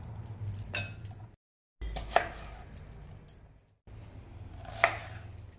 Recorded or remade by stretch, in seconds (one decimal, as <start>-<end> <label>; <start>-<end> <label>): 0.0-5.6 recorded